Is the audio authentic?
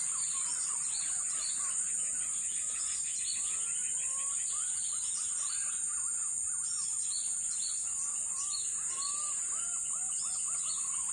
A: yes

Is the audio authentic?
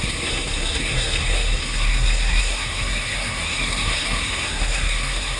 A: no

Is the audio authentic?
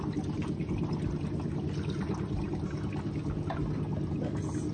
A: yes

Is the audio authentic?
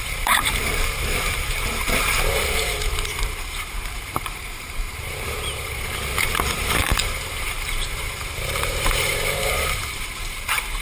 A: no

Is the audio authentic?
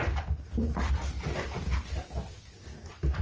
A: yes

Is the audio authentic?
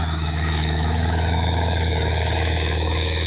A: no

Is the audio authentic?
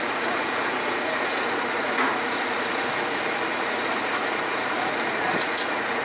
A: no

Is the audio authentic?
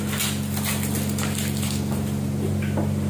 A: yes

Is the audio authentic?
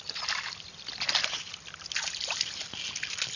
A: yes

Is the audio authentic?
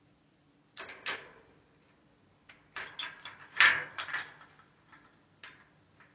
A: yes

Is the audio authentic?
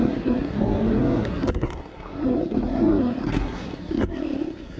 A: no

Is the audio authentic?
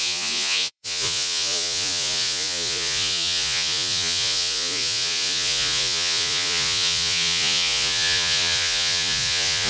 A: no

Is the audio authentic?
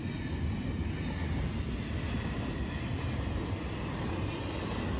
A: yes